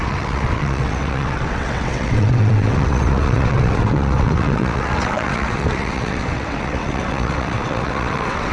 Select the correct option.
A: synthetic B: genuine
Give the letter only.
A